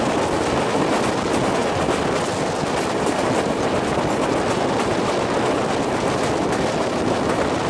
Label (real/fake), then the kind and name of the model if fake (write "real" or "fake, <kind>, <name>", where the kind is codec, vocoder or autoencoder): real